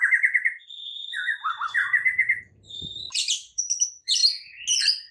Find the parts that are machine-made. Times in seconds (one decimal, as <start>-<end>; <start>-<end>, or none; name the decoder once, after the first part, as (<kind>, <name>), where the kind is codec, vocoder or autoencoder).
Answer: 0.0-4.2 (vocoder, BigVGAN v2)